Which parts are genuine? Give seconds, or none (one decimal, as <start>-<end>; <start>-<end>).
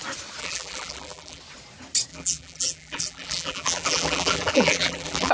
0.0-0.4; 1.4-2.1